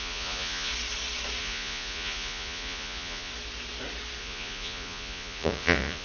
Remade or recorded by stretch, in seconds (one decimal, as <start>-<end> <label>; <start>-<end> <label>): 0.0-0.7 remade; 0.7-1.4 recorded; 1.4-3.3 remade; 3.3-4.2 recorded; 4.2-6.0 remade